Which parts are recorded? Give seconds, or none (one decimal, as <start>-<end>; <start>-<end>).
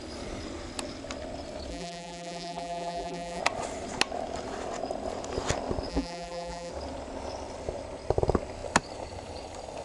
0.0-1.7; 3.4-5.9; 6.7-9.8